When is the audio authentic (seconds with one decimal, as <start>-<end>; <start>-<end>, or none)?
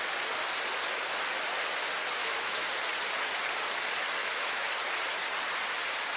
0.0-2.2; 2.7-4.2; 4.7-6.2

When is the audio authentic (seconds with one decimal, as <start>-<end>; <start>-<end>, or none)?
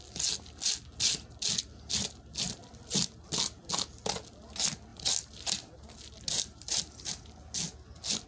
0.0-2.6; 3.6-4.9; 7.1-8.3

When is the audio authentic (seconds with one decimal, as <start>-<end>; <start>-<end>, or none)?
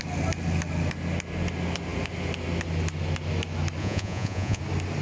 0.0-3.8; 4.6-5.0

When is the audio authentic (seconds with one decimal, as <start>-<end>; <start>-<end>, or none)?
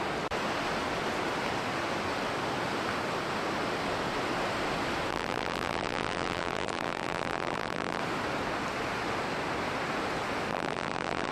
0.0-5.1; 8.0-10.5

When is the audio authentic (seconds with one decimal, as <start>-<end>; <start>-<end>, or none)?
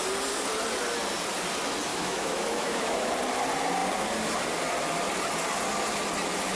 0.0-1.9; 3.1-6.6